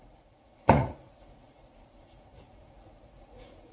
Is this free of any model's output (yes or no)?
no